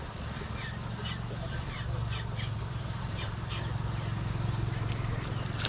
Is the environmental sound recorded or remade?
recorded